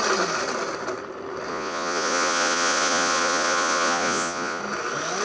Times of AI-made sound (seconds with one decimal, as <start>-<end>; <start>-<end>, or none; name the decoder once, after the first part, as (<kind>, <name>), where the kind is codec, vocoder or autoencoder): 1.5-4.6 (vocoder, Vocos)